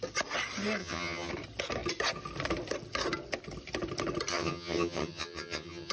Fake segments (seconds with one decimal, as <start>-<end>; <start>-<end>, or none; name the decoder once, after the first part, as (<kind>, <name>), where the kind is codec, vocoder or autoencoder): 0.8-1.3 (vocoder, HiFi-GAN); 4.3-5.9